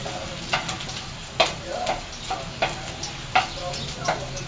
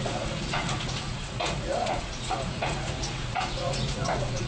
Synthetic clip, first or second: second